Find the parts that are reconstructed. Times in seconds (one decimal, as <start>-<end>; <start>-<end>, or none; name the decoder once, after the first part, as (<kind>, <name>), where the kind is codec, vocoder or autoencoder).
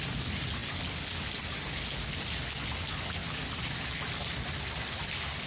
none